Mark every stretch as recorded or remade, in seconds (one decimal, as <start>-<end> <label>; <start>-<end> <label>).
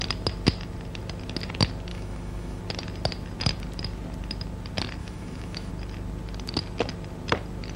0.0-1.9 recorded; 1.9-2.6 remade; 2.6-5.0 recorded; 5.0-5.7 remade; 5.7-7.8 recorded